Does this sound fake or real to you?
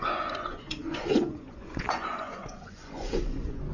fake